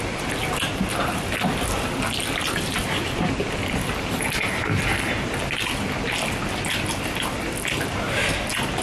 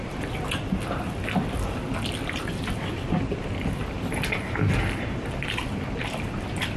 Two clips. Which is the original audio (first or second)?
first